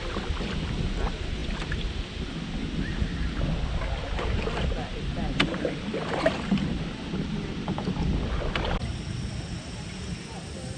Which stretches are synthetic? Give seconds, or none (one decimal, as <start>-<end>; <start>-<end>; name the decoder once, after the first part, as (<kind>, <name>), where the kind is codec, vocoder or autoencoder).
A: none